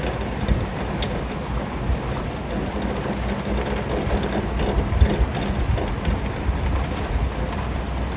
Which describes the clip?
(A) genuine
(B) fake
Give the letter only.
A